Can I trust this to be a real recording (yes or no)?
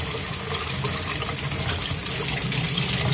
yes